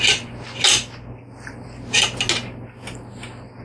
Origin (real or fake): real